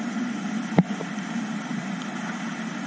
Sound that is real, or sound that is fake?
real